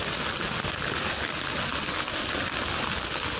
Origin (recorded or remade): recorded